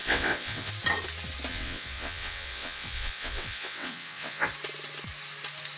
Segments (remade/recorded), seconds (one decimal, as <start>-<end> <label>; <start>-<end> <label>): 0.0-0.7 remade; 0.7-1.5 recorded; 1.5-4.5 remade; 4.5-5.8 recorded

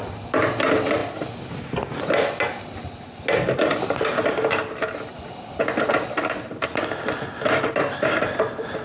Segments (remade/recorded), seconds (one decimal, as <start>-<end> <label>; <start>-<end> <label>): 0.0-8.8 recorded

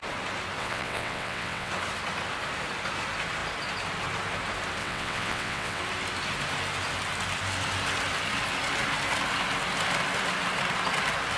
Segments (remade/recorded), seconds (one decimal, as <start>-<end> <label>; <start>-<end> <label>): 0.0-0.6 recorded; 0.6-1.7 remade; 1.7-4.8 recorded; 4.8-5.8 remade; 5.8-11.4 recorded

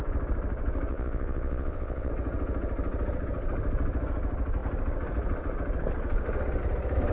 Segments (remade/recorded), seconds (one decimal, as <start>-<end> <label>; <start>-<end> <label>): 0.0-0.9 recorded; 0.9-2.1 remade; 2.1-7.1 recorded